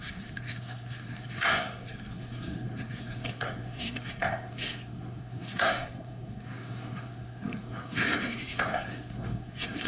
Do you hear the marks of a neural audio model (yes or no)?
yes